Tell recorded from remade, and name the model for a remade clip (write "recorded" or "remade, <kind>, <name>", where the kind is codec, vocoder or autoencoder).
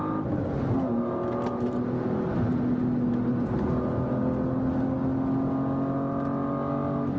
recorded